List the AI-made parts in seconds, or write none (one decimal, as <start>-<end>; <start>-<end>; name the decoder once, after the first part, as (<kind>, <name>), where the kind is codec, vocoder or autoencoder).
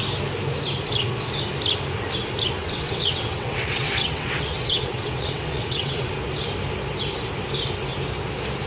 2.6-6.1 (vocoder, WaveNeXt)